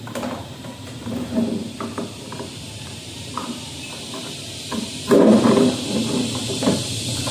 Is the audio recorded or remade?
remade